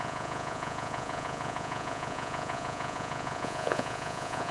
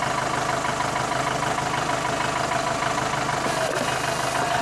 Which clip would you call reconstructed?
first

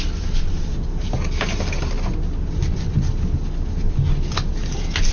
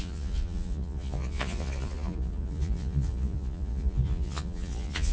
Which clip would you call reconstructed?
second